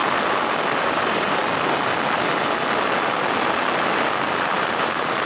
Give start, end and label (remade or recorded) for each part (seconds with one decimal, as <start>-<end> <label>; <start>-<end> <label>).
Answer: 0.0-0.8 recorded; 0.8-1.4 remade; 1.4-4.6 recorded; 4.6-5.3 remade